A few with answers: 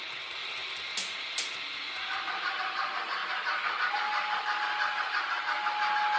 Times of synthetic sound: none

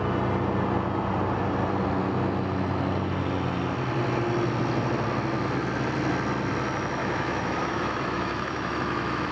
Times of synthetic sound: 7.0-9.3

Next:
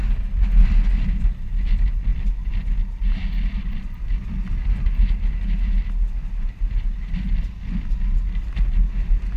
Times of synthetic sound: none

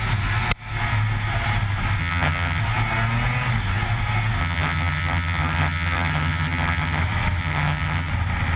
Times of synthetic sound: 2.0-2.6; 4.4-7.0; 7.4-8.1

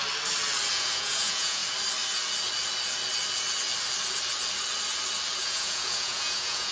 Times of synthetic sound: 0.7-1.6; 5.4-6.7

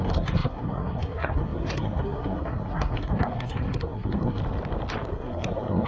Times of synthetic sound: 0.0-4.4; 5.1-5.9